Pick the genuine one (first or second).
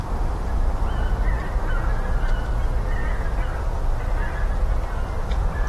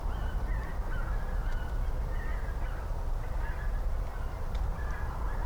first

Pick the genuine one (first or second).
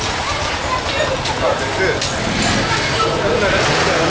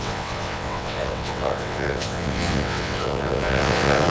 first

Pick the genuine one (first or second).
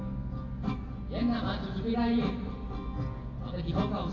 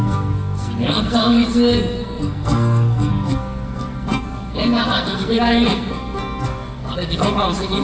first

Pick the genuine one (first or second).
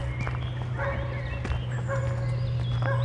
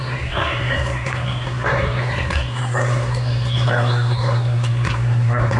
first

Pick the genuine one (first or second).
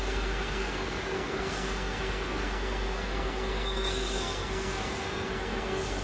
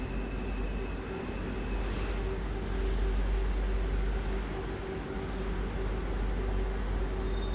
second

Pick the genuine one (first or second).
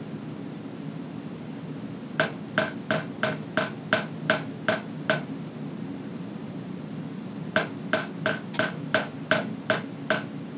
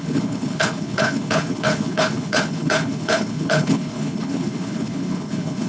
first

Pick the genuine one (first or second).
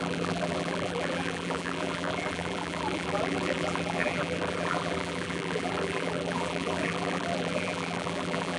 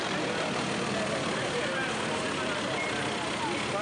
second